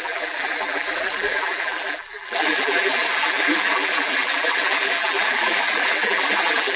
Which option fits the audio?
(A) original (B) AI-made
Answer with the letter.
B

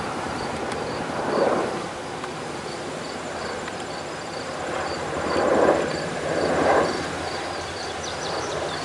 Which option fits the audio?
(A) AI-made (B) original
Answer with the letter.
A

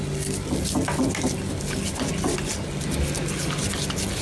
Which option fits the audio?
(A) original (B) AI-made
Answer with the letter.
A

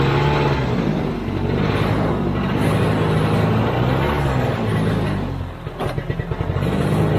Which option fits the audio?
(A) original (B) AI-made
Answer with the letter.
A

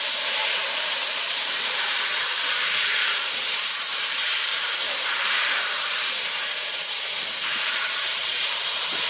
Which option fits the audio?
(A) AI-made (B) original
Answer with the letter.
A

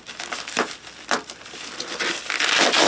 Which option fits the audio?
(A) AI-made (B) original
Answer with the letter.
A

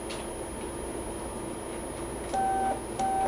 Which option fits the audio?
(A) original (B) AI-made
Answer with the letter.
A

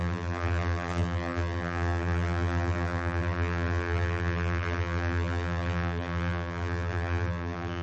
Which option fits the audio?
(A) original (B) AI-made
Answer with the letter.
B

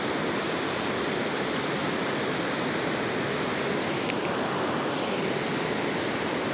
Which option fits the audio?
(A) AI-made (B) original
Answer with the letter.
B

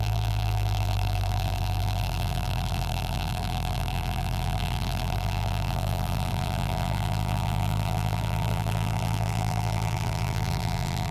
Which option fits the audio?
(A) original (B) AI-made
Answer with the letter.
B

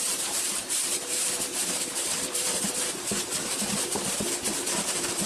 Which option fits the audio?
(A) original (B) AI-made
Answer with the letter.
B